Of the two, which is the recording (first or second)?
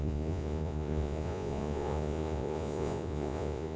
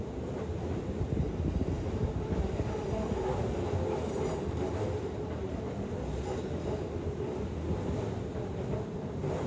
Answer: second